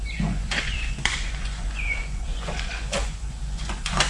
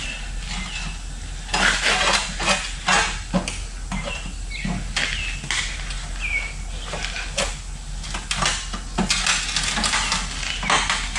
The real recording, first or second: second